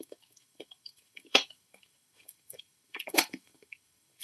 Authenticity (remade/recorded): remade